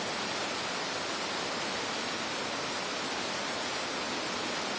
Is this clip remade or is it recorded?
recorded